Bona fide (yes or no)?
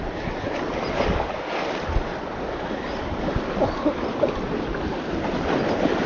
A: yes